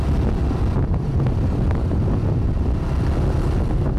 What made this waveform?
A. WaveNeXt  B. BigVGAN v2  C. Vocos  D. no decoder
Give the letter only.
D